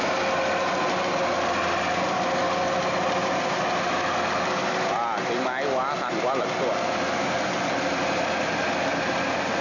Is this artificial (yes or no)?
no